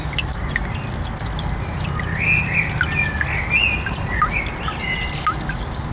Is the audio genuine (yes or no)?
yes